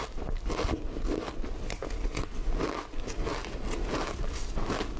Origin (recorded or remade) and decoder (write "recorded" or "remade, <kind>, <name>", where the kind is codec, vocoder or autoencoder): recorded